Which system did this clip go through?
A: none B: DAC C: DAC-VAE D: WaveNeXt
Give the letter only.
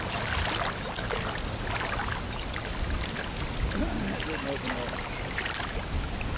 A